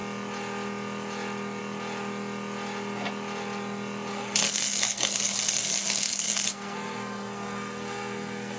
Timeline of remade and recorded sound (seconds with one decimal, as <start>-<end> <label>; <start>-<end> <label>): 0.0-4.1 recorded; 4.1-8.6 remade